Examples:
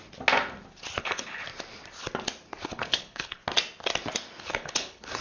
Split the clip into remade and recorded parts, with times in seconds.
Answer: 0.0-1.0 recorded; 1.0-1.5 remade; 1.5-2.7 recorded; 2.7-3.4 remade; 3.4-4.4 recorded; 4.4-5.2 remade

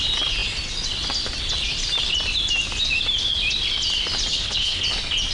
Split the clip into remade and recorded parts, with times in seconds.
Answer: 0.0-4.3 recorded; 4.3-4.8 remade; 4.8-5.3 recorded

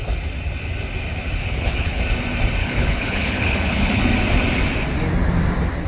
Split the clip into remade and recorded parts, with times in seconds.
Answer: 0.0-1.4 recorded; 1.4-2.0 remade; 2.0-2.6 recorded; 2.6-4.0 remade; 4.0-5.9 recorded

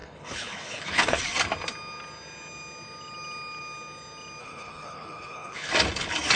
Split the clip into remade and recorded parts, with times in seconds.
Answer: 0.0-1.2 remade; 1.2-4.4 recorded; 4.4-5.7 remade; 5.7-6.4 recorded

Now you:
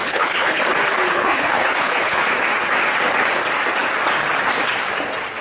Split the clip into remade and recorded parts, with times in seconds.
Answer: 0.0-0.6 remade; 0.6-1.1 recorded; 1.1-2.2 remade; 2.2-5.4 recorded